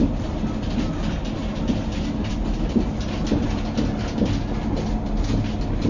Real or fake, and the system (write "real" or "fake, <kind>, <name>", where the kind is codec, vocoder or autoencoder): real